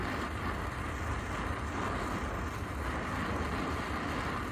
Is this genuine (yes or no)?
yes